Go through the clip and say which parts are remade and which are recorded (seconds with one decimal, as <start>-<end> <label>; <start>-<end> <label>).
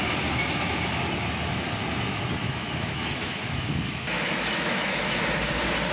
0.0-0.4 recorded; 0.4-1.0 remade; 1.0-2.4 recorded; 2.4-5.2 remade; 5.2-5.9 recorded